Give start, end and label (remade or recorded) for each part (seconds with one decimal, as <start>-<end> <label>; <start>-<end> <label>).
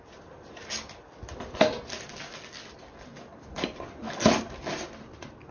0.0-3.1 recorded; 3.1-3.8 remade; 3.8-5.5 recorded